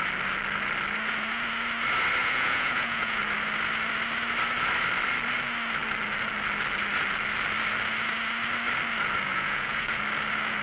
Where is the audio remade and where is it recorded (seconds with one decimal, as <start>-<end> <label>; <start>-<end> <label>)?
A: 0.0-2.2 recorded; 2.2-3.2 remade; 3.2-9.3 recorded; 9.3-10.0 remade; 10.0-10.6 recorded